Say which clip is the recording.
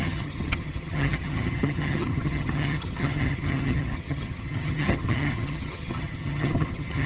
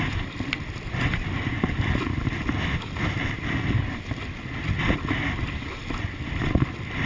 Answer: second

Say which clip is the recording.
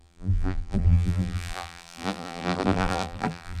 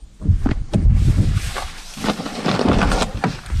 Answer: second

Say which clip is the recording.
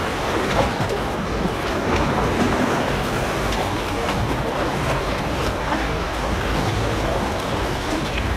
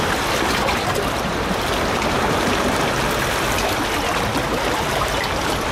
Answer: second